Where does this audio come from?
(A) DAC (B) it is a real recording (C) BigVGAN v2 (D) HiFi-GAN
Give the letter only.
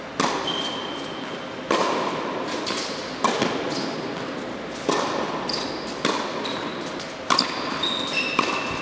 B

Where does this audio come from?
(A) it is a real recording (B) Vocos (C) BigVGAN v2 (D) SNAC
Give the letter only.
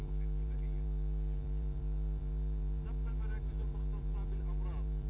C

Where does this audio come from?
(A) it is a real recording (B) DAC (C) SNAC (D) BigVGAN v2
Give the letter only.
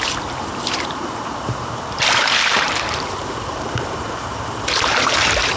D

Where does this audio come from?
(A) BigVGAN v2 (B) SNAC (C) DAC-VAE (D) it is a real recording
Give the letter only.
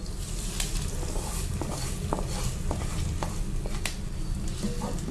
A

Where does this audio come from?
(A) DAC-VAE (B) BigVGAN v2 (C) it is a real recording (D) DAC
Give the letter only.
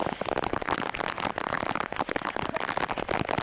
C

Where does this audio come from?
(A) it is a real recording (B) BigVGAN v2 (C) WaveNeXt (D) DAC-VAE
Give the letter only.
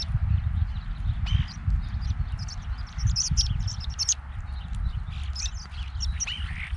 A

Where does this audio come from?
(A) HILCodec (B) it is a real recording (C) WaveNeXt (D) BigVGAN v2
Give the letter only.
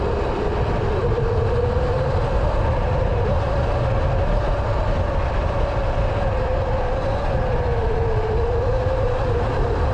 B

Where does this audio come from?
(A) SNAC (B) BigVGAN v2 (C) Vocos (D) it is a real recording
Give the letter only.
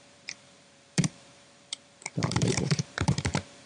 B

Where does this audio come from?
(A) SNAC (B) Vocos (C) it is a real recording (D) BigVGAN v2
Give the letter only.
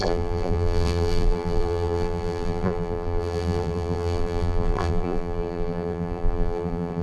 D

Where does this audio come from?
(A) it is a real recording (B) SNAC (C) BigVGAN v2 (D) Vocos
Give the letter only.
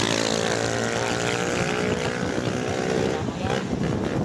A